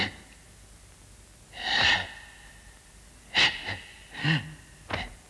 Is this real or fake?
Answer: real